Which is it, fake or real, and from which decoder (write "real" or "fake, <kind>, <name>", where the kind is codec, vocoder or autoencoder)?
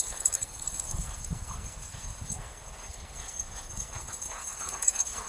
fake, codec, SNAC